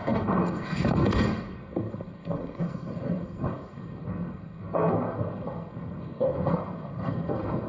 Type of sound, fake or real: fake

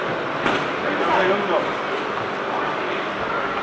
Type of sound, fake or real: real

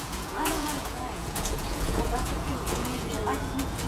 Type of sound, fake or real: fake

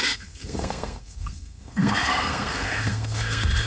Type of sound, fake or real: fake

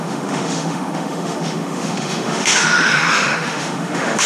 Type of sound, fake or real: fake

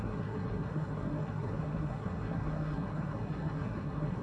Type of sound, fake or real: fake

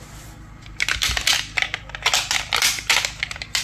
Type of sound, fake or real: real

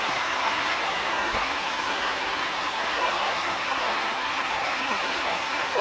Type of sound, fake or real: fake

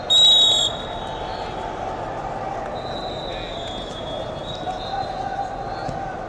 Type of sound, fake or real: real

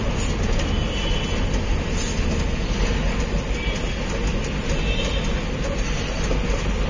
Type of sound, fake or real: real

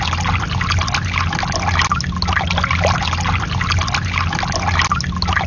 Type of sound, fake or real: real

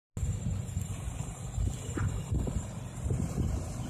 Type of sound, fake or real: real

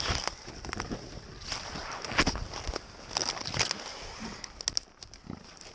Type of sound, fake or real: real